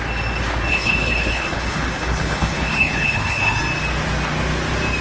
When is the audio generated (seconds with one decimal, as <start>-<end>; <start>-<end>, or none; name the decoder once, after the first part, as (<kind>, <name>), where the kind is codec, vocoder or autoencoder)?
0.7-3.6 (codec, HILCodec)